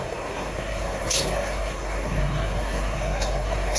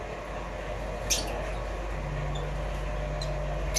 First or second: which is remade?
first